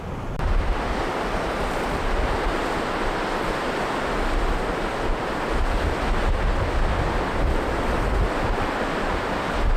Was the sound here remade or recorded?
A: recorded